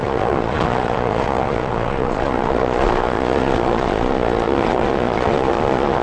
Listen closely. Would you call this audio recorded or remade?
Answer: remade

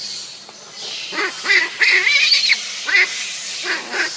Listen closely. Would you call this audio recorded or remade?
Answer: recorded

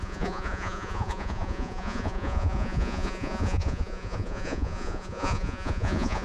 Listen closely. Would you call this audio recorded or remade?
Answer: remade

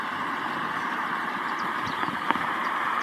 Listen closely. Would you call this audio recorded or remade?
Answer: remade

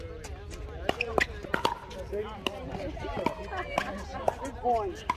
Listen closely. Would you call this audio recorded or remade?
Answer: recorded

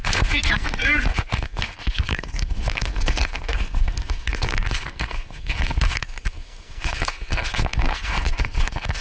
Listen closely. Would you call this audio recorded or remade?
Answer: remade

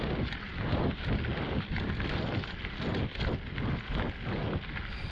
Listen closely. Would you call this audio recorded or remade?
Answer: recorded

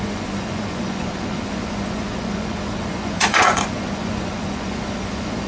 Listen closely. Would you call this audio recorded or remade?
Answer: remade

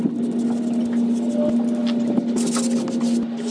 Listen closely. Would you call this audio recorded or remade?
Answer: recorded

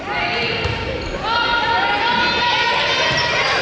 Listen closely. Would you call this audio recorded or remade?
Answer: recorded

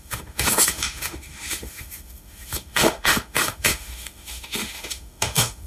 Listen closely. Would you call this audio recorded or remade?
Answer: remade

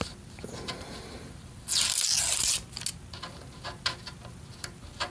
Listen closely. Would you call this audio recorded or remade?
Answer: recorded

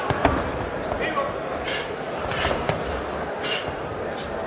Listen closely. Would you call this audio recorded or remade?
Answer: recorded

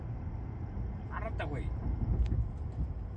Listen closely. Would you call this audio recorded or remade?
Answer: recorded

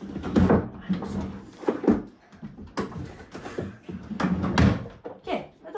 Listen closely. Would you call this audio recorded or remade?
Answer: recorded